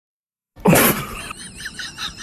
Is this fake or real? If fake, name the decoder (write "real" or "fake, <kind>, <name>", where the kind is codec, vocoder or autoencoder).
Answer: fake, vocoder, BigVGAN v2